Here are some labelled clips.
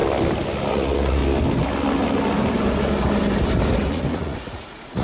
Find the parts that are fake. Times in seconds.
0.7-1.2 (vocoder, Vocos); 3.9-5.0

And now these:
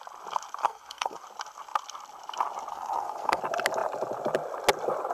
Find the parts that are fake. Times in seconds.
0.6-1.2 (codec, SNAC); 2.7-3.4